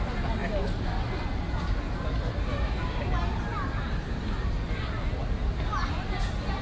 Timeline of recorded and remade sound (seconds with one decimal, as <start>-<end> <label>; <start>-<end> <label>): 0.0-6.6 recorded